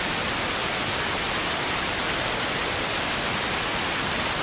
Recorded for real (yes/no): yes